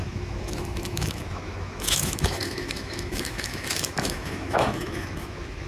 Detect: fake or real fake